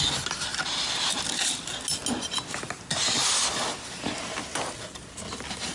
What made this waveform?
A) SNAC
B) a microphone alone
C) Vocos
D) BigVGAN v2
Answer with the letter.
B